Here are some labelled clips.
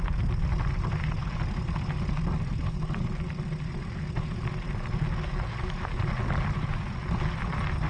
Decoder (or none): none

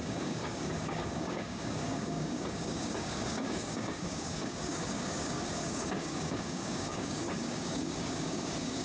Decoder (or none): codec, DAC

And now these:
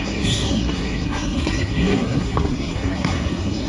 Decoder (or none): codec, SNAC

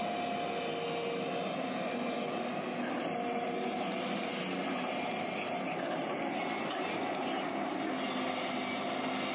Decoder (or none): none